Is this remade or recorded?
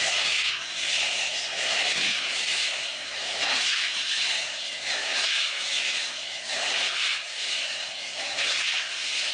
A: remade